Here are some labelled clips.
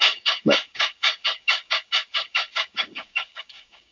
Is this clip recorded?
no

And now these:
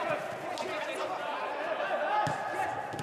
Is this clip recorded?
yes